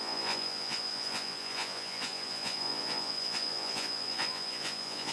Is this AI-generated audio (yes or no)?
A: yes